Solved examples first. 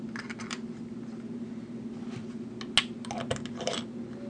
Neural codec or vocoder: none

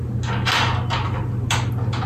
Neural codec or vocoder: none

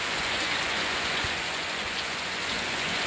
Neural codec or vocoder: vocoder, Vocos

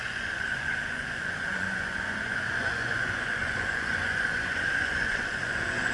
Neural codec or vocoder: vocoder, Vocos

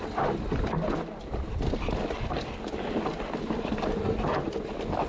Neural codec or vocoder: none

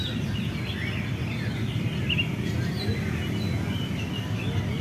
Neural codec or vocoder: none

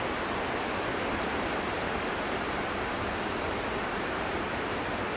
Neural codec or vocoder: none